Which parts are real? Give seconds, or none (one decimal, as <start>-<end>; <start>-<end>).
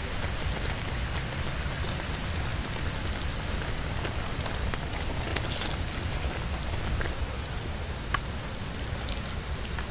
0.0-9.9